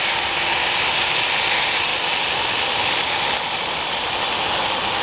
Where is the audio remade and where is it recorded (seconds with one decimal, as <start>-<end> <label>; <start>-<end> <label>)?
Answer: 0.0-5.0 recorded